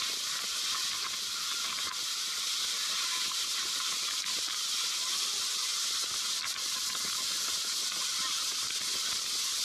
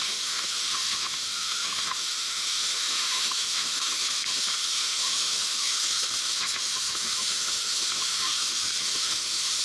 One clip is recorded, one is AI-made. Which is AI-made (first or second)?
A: second